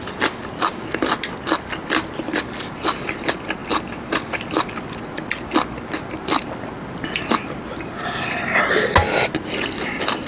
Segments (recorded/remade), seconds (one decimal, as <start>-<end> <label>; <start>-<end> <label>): 0.0-10.3 recorded